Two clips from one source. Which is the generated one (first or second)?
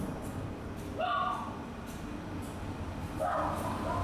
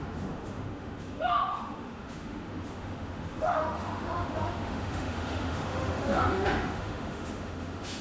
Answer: second